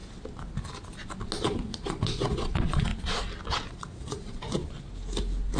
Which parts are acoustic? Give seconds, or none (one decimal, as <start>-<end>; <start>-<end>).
0.0-1.4; 2.9-3.7; 4.6-5.6